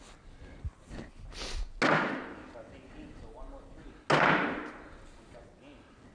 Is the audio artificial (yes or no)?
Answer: no